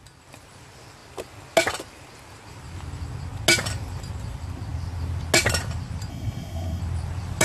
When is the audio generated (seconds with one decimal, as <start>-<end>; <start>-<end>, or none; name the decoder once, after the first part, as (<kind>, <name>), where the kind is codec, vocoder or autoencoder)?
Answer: 6.1-6.8 (codec, SNAC)